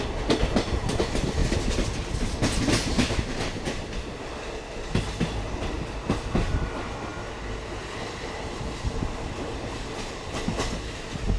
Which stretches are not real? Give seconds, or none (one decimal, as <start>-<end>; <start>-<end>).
none